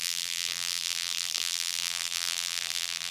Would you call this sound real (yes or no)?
no